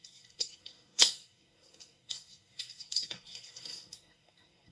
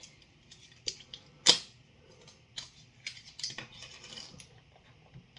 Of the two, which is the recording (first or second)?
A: second